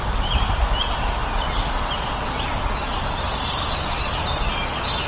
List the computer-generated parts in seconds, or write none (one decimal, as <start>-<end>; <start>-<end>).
0.0-5.1

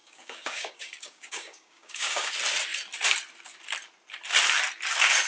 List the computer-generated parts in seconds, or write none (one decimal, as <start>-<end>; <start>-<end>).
0.0-2.3

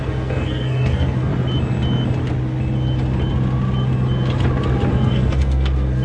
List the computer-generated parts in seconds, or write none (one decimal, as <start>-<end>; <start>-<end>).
0.0-1.3; 4.9-6.0

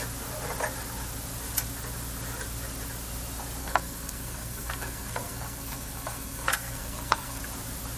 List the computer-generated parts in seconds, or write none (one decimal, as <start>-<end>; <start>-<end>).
3.6-7.4

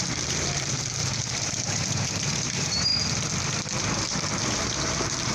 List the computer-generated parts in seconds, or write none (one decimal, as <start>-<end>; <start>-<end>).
0.0-2.9; 3.8-5.3

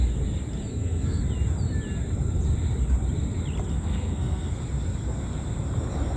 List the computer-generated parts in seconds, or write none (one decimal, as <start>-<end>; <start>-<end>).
0.7-1.2; 3.7-4.6

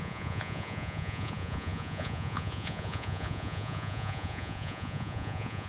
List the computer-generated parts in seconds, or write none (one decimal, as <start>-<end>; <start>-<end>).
0.0-5.7